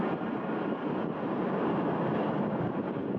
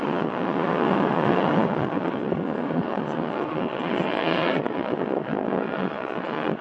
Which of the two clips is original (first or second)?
first